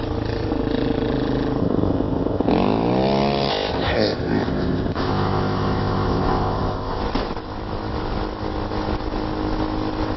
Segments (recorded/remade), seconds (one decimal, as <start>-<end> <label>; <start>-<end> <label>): 0.0-1.6 recorded; 1.6-2.5 remade; 2.5-3.5 recorded; 3.5-7.0 remade; 7.0-10.2 recorded